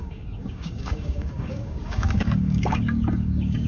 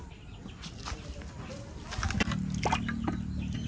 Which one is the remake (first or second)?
first